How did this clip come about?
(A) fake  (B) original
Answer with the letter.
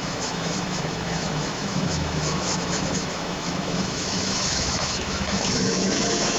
A